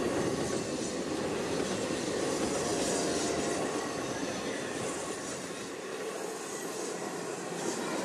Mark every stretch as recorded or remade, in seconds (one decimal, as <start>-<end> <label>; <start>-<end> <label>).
0.0-4.2 recorded; 4.2-6.1 remade; 6.1-8.0 recorded